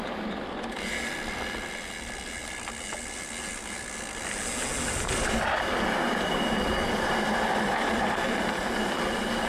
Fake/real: real